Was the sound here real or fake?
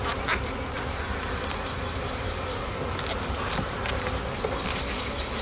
real